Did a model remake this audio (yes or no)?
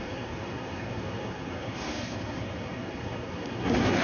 yes